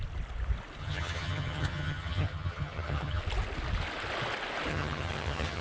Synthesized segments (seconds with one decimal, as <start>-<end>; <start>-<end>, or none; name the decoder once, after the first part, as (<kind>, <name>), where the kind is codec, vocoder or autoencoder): 0.8-3.2 (vocoder, HiFi-GAN); 4.7-5.6